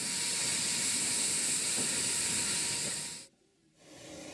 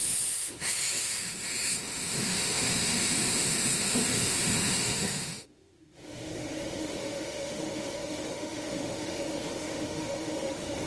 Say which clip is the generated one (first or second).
second